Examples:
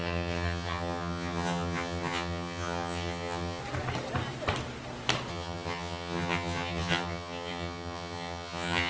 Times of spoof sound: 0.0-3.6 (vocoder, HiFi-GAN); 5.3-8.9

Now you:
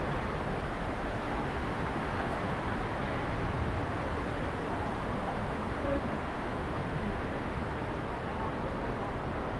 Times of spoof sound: 0.8-2.5 (autoencoder, DAC-VAE); 5.1-7.8

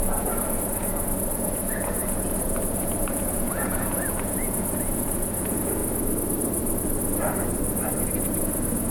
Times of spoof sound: 0.0-5.8 (vocoder, Vocos); 8.4-8.9

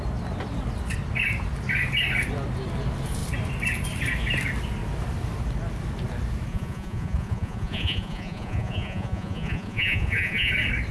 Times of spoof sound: 6.5-10.5 (vocoder, Vocos)

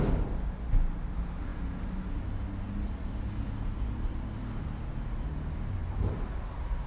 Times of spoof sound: none

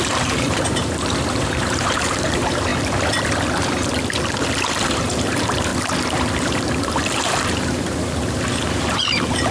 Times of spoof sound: 0.0-2.7 (vocoder, BigVGAN v2); 4.9-5.7; 6.4-9.5

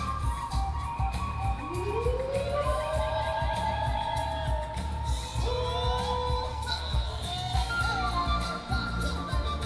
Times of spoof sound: 6.5-7.8 (codec, SNAC)

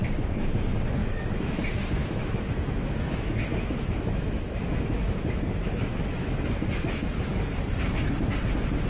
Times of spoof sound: 1.0-1.6 (autoencoder, DAC-VAE); 2.0-7.2